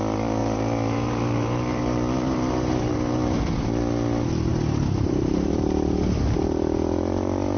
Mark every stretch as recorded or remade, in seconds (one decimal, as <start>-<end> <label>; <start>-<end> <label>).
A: 0.0-0.4 recorded; 0.4-3.4 remade; 3.4-4.5 recorded; 4.5-5.5 remade; 5.5-7.6 recorded